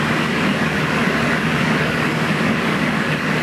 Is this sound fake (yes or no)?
yes